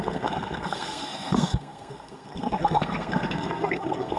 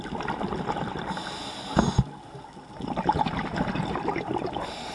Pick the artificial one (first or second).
first